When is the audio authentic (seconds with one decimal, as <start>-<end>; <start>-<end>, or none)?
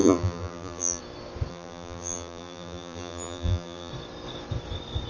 1.0-1.5; 3.9-5.1